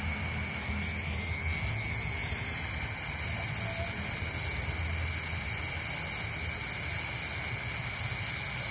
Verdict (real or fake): real